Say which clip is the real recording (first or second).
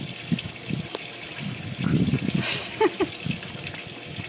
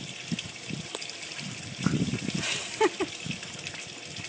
first